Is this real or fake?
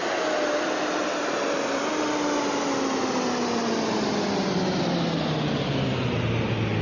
real